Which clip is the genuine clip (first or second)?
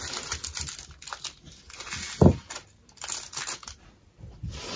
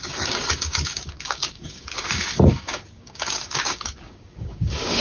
first